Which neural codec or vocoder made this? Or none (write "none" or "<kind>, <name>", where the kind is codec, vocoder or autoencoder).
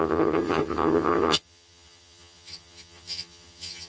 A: vocoder, HiFi-GAN